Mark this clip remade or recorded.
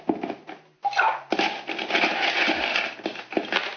recorded